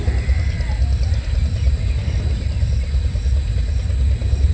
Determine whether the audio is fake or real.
real